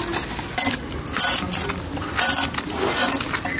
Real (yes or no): yes